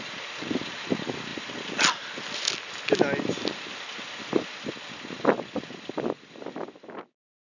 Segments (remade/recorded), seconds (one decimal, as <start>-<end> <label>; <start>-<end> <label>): 0.0-7.6 recorded